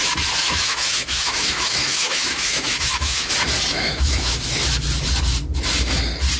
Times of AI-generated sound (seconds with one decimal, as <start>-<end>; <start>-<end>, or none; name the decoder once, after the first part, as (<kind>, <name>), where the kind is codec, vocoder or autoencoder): 0.4-3.3 (autoencoder, DAC-VAE); 3.7-4.4